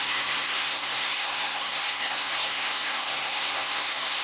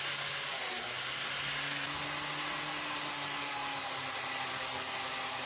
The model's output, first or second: first